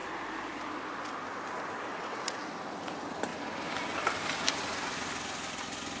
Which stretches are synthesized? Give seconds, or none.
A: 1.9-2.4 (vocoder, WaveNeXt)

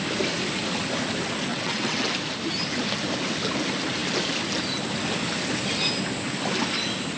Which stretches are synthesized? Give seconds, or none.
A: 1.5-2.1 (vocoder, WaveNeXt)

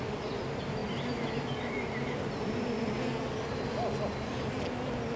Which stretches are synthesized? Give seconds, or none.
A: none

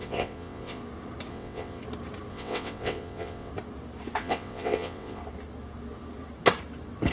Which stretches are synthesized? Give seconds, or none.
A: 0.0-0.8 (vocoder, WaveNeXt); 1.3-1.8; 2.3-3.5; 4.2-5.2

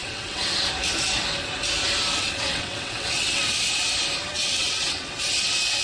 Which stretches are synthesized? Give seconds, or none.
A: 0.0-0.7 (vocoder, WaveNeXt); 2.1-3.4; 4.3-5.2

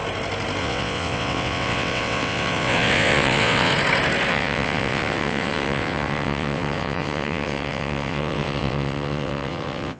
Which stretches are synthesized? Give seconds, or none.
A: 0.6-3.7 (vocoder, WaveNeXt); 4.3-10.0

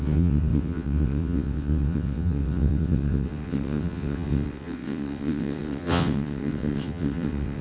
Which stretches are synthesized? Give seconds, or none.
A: 0.0-7.6 (vocoder, WaveNeXt)